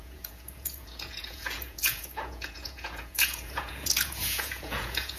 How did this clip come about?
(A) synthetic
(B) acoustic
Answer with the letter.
A